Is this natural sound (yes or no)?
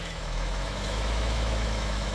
no